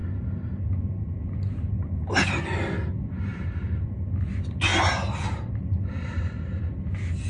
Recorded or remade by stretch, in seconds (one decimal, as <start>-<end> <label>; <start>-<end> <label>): 0.0-3.3 recorded; 3.3-3.8 remade; 3.8-4.7 recorded; 4.7-6.6 remade; 6.6-7.3 recorded